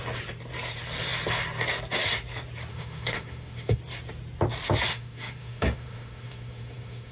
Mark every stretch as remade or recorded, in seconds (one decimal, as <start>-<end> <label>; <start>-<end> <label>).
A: 0.0-2.7 recorded; 2.7-3.8 remade; 3.8-4.9 recorded; 4.9-7.1 remade